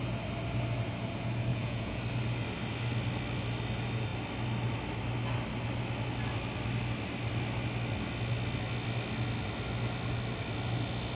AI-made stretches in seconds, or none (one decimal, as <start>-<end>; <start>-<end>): 1.5-2.0